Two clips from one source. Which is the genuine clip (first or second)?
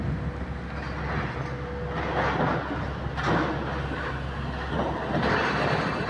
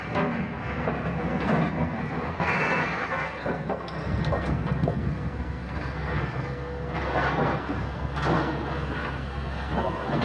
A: first